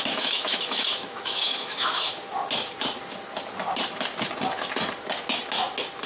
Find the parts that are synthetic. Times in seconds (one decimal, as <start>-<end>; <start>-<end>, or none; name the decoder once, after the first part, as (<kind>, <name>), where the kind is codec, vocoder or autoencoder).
0.0-2.1 (autoencoder, DAC-VAE)